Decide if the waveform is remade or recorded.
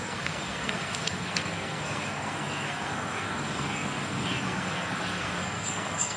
remade